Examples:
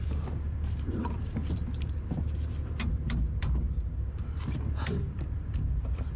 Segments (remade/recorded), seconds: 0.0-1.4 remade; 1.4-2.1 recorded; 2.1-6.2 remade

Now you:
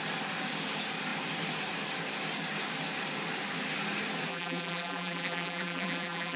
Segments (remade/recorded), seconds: 0.0-4.3 recorded; 4.3-6.4 remade